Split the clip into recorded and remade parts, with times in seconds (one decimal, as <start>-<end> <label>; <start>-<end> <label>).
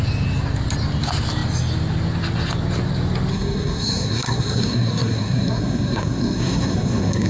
0.0-3.3 recorded; 3.3-7.3 remade